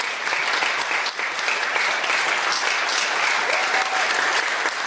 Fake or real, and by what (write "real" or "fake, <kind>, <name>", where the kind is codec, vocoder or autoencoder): real